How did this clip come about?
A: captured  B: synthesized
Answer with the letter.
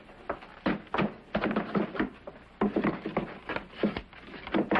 A